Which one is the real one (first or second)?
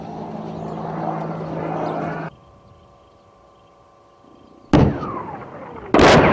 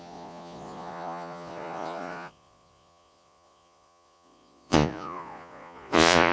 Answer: first